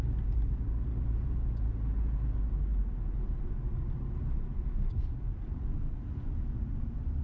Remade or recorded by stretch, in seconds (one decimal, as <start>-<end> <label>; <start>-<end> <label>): 0.0-7.2 recorded